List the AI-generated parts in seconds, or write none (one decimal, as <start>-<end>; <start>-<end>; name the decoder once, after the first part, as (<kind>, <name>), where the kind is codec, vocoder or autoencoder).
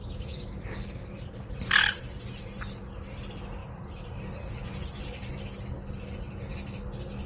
0.0-2.0 (vocoder, BigVGAN v2); 3.6-5.3